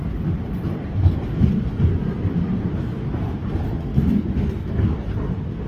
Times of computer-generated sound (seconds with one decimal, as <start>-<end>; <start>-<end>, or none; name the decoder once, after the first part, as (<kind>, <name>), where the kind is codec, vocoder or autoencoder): 3.9-4.8 (autoencoder, DAC-VAE)